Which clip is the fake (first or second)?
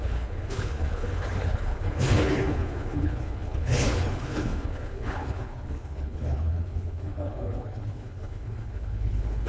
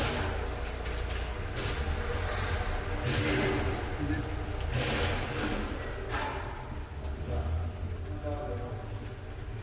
first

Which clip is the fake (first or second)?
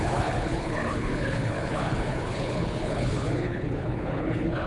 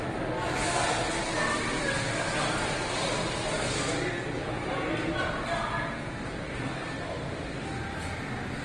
first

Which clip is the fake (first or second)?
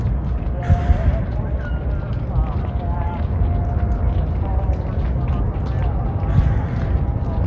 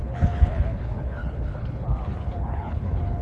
second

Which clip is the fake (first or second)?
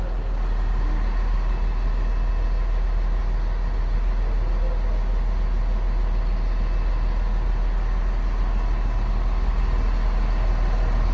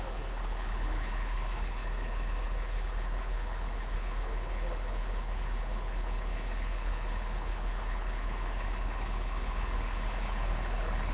second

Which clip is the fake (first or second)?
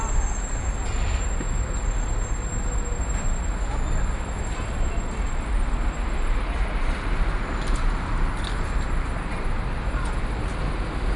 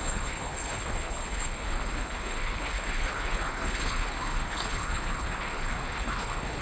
second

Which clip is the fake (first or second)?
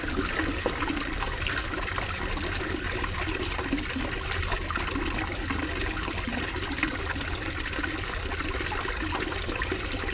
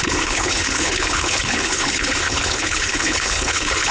second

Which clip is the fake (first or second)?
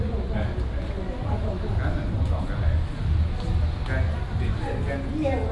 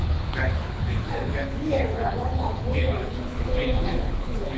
second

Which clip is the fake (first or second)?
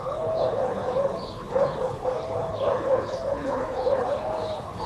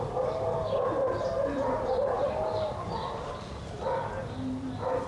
first